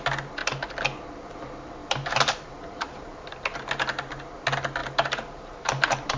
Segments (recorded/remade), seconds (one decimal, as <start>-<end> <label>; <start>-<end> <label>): 0.0-1.8 recorded; 1.8-3.3 remade; 3.3-4.8 recorded; 4.8-6.2 remade